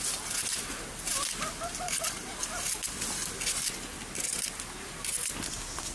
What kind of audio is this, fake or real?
real